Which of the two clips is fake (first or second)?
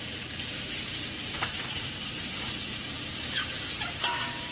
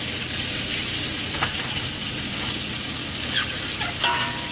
first